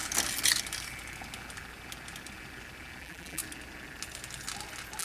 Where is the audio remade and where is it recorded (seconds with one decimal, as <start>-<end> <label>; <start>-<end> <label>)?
0.0-3.0 recorded; 3.0-3.4 remade; 3.4-5.0 recorded